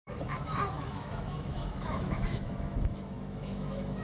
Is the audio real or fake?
fake